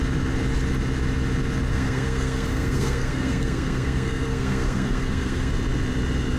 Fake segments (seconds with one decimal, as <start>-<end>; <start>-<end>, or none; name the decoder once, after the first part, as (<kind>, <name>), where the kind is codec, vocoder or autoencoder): 1.7-5.5 (codec, SNAC)